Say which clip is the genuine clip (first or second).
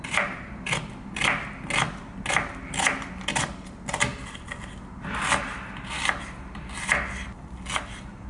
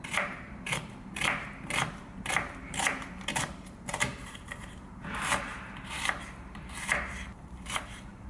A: first